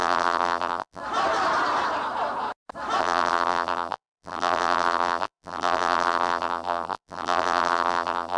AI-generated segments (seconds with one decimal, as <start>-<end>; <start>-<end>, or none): 0.0-1.0; 3.0-8.4